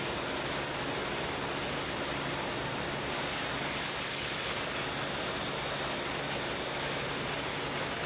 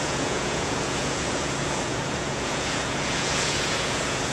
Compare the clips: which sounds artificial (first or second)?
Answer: second